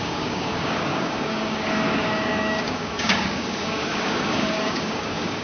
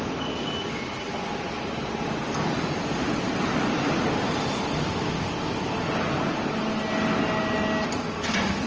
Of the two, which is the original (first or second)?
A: second